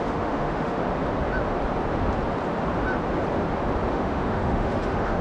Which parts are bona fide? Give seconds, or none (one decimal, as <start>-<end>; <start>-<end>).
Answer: 0.8-3.9